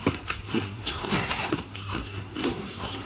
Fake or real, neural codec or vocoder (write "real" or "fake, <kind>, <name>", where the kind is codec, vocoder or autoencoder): fake, codec, SNAC